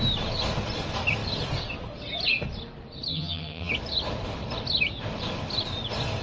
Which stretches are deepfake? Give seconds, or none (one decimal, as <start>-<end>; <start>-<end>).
3.1-3.7